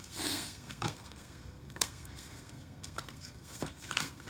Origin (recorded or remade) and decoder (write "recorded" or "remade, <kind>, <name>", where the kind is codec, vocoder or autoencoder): remade, codec, SNAC